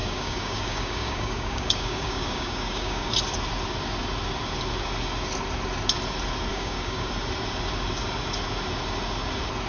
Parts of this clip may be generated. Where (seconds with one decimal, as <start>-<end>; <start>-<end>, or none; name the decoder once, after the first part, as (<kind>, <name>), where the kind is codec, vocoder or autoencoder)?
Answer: 0.0-3.1 (codec, DAC); 6.5-7.1